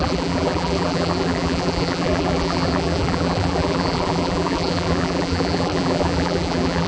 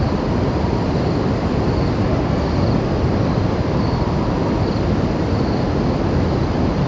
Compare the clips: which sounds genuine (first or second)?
second